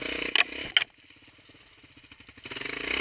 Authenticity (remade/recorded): recorded